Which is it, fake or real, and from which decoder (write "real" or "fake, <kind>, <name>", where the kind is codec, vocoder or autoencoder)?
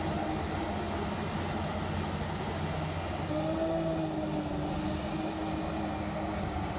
real